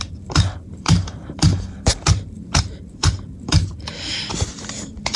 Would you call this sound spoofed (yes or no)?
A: yes